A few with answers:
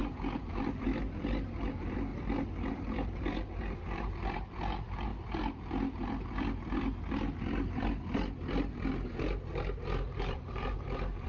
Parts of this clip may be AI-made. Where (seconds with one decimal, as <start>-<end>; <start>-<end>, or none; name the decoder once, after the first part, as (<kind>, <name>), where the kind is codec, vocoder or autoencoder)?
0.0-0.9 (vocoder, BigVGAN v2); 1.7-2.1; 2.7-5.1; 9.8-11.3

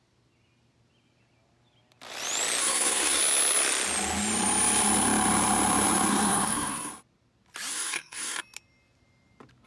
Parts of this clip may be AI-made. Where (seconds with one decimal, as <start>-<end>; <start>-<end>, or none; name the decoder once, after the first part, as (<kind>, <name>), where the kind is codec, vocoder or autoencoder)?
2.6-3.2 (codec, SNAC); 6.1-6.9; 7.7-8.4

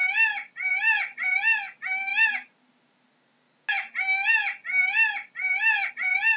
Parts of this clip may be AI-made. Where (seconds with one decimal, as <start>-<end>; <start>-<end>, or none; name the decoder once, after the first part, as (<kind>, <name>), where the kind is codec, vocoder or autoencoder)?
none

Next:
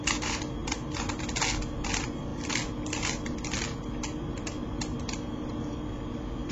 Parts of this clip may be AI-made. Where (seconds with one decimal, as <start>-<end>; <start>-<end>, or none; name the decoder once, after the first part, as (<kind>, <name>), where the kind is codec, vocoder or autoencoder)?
0.6-1.2 (vocoder, BigVGAN v2)

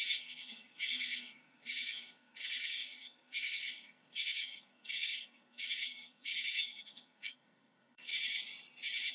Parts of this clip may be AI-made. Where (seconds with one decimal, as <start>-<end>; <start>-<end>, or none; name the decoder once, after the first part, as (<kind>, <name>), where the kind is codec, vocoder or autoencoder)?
0.0-8.1 (codec, SNAC)

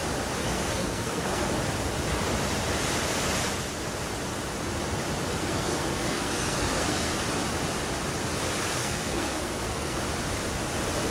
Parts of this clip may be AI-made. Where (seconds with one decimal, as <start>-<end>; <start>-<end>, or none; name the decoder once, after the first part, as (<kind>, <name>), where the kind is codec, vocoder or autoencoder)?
0.4-1.5 (codec, SNAC); 5.3-7.2; 8.8-10.0